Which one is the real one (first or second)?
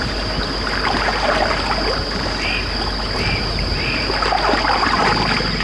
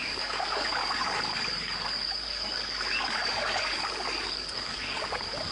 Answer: first